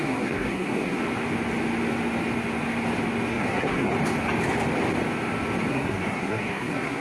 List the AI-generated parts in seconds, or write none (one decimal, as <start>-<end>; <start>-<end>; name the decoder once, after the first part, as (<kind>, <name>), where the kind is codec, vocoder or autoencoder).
0.0-1.0 (codec, SNAC); 3.3-3.9; 5.7-7.0

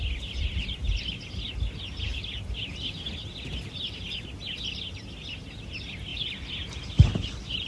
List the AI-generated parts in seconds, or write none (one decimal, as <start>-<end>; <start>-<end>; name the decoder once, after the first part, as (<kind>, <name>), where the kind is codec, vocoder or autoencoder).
none

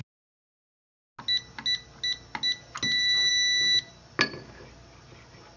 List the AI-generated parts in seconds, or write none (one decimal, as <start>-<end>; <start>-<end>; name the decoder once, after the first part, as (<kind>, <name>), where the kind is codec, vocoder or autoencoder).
none

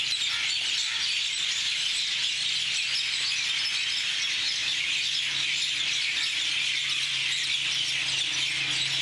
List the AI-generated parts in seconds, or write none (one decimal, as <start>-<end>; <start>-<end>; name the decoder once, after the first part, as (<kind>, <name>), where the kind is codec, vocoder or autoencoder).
none

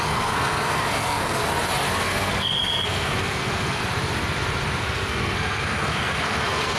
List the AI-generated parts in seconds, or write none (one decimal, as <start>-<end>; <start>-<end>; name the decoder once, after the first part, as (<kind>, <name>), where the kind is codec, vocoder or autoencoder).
0.0-1.4 (codec, SNAC); 2.0-3.8; 4.8-6.8

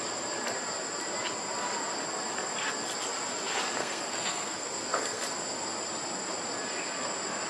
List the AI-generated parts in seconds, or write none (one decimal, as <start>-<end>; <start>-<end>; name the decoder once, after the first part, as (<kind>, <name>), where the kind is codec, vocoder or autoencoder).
3.8-5.2 (codec, SNAC)

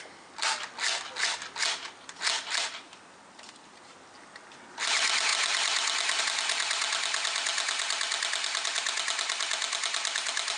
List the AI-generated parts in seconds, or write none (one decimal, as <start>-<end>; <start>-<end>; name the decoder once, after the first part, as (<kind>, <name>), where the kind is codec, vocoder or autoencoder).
none